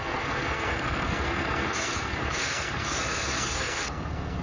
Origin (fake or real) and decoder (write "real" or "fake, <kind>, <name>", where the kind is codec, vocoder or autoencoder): fake, codec, SNAC